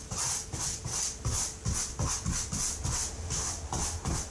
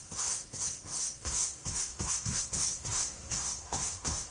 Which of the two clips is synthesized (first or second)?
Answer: second